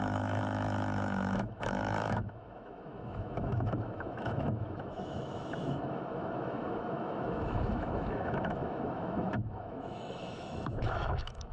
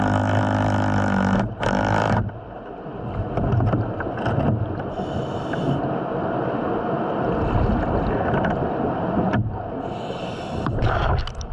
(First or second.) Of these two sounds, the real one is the second